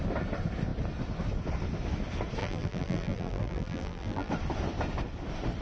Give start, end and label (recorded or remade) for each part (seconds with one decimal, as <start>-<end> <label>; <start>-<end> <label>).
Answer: 0.0-2.4 recorded; 2.4-4.3 remade; 4.3-5.6 recorded